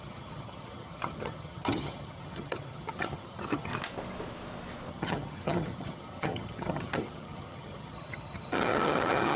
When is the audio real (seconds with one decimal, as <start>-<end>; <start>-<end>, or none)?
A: 3.7-4.9